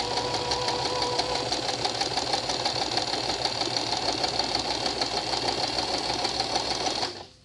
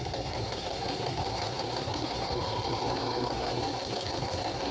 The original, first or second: first